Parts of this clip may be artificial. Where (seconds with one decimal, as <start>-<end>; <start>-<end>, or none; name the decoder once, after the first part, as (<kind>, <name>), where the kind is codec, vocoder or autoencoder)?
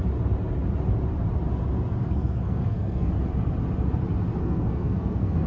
2.0-3.1 (codec, SNAC); 4.4-5.5